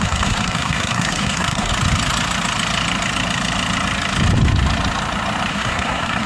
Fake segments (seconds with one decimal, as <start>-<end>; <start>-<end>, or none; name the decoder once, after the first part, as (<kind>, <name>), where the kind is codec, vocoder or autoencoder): 0.0-1.7 (codec, SNAC); 5.5-6.3